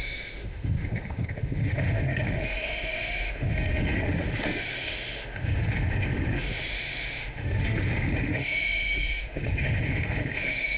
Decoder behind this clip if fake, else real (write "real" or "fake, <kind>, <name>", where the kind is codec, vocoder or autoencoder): fake, autoencoder, DAC-VAE